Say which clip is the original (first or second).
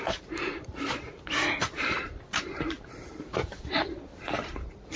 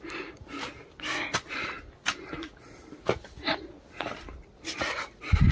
second